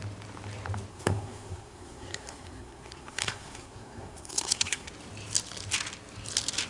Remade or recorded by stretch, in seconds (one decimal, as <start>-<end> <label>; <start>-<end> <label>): 0.0-0.9 recorded; 0.9-4.9 remade; 4.9-6.7 recorded